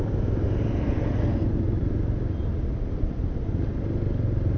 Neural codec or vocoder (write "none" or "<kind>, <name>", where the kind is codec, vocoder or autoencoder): none